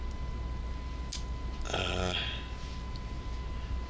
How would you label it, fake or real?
real